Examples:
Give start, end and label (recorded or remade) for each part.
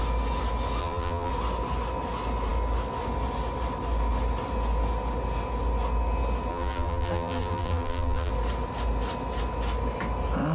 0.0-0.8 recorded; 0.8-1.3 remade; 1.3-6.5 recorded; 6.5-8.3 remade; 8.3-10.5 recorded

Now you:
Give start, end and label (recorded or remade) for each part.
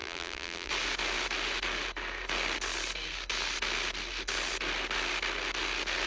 0.0-0.7 remade; 0.7-6.1 recorded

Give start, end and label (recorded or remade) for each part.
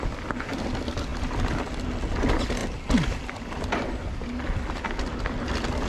0.0-5.9 recorded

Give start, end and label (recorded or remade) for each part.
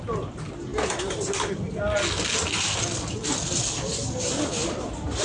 0.0-5.2 recorded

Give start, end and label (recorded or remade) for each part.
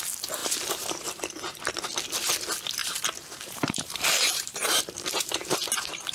0.0-0.4 recorded; 0.4-1.2 remade; 1.2-2.8 recorded; 2.8-6.1 remade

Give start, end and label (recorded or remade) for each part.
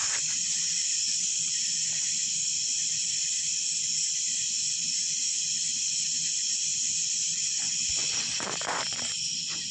0.0-5.2 remade; 5.2-6.3 recorded; 6.3-9.7 remade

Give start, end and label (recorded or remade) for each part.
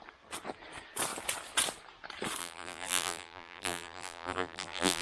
0.0-2.4 recorded; 2.4-5.0 remade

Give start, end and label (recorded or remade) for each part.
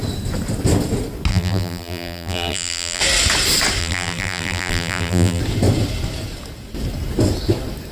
0.0-1.3 recorded; 1.3-3.0 remade; 3.0-3.8 recorded; 3.8-5.4 remade; 5.4-7.9 recorded